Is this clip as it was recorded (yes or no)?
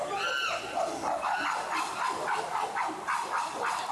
yes